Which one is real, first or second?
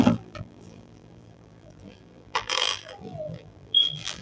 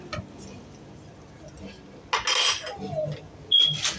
second